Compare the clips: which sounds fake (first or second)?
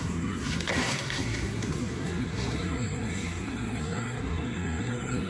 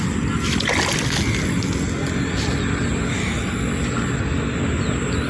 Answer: first